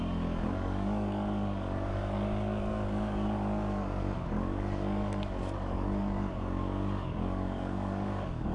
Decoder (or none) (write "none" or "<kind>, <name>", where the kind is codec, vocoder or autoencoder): codec, DAC